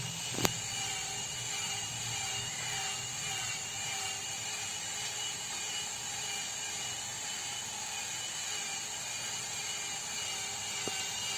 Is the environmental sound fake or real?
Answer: fake